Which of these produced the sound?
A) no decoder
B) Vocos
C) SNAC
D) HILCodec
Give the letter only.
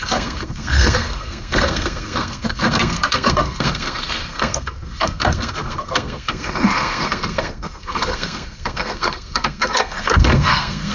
C